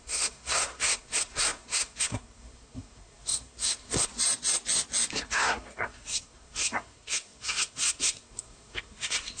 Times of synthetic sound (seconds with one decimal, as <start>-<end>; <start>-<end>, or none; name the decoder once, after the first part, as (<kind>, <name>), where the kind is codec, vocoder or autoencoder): 0.0-4.1 (codec, SNAC); 5.1-9.4